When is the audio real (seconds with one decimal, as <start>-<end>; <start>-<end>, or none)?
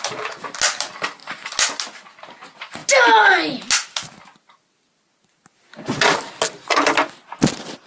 0.0-7.9